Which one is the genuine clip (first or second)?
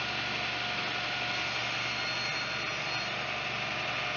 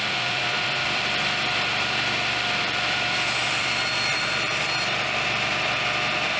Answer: first